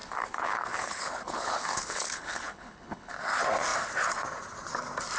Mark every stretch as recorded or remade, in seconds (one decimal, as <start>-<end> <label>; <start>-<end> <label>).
0.0-3.1 remade; 3.1-5.2 recorded